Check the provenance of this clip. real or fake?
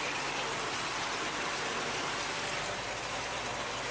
fake